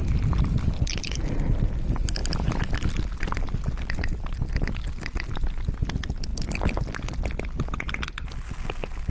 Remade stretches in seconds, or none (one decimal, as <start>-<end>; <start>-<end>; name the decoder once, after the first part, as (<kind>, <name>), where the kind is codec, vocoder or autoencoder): none